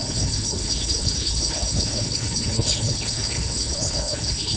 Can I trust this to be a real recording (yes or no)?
no